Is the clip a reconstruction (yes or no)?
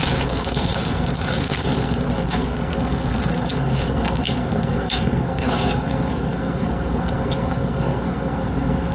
yes